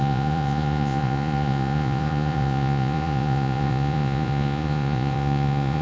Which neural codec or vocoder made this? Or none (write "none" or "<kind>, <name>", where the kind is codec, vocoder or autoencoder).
vocoder, Vocos